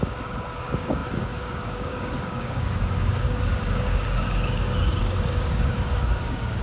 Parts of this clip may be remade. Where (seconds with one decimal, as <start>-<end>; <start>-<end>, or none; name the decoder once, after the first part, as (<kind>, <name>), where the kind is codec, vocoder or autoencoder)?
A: 0.0-6.6 (codec, DAC)